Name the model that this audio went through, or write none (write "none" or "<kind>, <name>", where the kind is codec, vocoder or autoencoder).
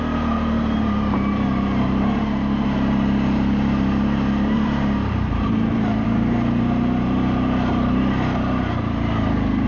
vocoder, BigVGAN v2